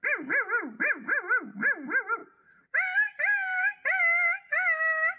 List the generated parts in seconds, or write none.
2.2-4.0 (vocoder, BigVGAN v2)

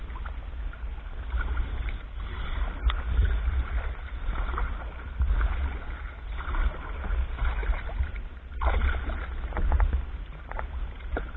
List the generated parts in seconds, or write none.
7.6-8.3 (vocoder, BigVGAN v2)